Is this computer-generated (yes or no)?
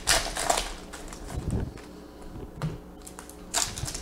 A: no